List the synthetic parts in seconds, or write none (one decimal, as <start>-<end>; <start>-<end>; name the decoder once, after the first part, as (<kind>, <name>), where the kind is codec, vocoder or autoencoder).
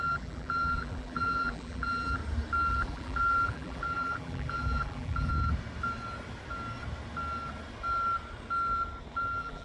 0.0-2.2 (vocoder, BigVGAN v2); 2.7-5.3; 9.1-9.6